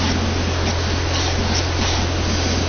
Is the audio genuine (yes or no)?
yes